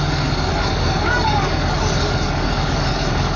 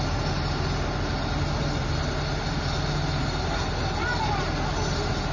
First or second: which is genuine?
second